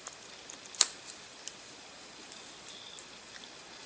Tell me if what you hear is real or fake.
real